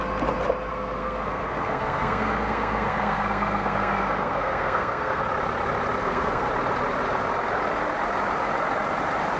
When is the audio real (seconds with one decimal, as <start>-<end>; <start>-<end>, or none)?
0.0-0.7; 5.2-6.0; 6.5-9.4